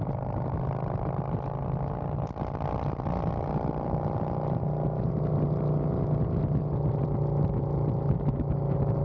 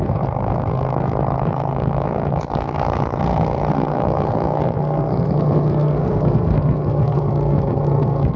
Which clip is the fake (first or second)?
second